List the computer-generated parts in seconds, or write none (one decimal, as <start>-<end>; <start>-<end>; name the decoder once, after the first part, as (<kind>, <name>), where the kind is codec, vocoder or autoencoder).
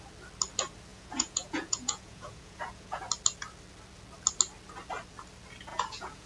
0.9-3.0 (vocoder, Vocos); 5.7-6.3